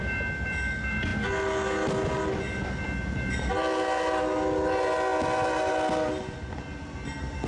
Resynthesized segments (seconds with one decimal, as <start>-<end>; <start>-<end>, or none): none